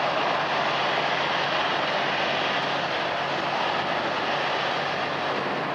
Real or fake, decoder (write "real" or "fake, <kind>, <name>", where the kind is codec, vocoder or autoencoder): real